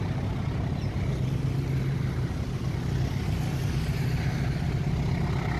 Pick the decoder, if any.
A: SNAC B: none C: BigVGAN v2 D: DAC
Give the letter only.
B